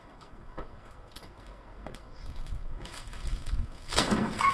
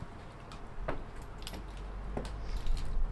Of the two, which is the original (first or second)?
second